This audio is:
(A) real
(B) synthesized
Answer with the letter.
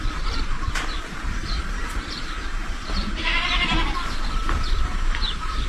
B